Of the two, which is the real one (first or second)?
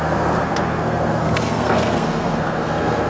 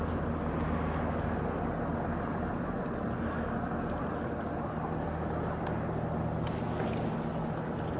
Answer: second